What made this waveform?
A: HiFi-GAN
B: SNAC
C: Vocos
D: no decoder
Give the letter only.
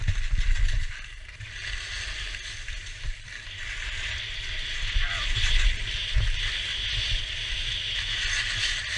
D